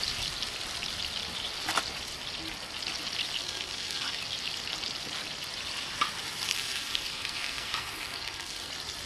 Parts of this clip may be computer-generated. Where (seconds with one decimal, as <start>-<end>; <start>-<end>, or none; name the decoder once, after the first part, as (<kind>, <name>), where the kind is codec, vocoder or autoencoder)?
3.4-4.2 (codec, SNAC); 6.5-8.7

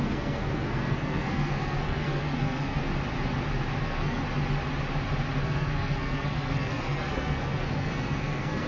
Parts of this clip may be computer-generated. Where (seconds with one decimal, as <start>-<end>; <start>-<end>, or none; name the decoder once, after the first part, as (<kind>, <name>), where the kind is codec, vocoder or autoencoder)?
0.0-2.8 (codec, SNAC); 3.8-4.2; 5.4-8.7